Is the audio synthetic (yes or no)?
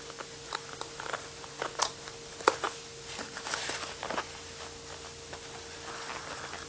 no